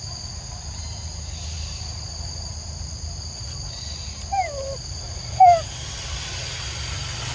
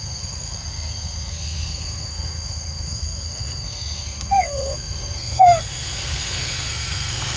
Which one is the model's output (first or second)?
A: second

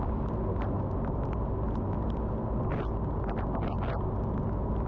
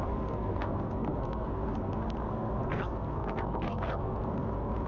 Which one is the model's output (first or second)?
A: second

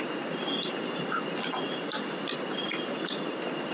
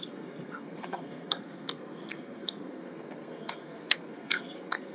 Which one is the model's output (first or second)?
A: second